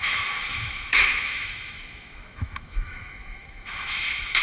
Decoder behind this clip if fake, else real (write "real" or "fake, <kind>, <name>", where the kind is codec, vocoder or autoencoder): fake, autoencoder, DAC-VAE